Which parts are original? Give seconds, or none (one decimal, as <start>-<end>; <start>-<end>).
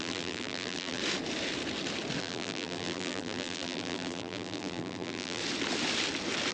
1.0-2.2; 5.4-6.5